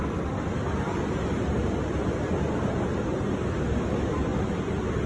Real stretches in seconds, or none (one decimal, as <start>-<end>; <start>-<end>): 0.0-5.1